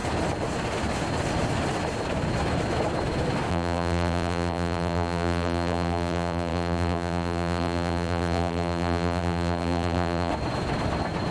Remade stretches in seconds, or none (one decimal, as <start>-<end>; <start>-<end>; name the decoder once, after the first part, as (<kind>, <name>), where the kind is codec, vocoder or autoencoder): 3.5-10.3 (vocoder, BigVGAN v2)